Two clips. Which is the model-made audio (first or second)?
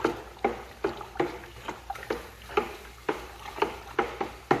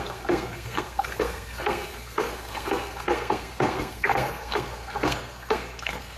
second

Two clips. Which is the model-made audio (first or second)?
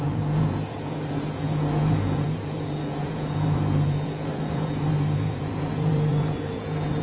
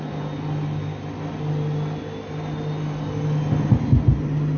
first